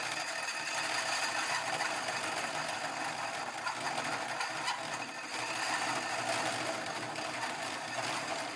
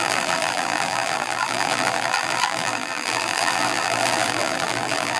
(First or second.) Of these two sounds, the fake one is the second